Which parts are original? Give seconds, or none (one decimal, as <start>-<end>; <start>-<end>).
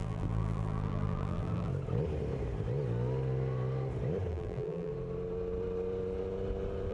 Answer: 1.7-4.3; 4.9-6.9